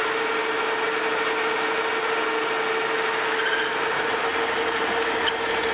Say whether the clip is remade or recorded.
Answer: recorded